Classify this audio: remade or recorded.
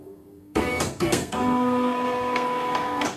remade